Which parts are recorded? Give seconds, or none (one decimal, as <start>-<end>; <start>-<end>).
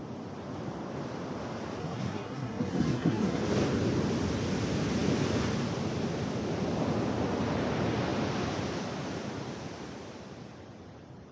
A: 0.0-1.8; 3.4-11.3